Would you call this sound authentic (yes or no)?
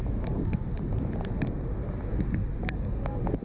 yes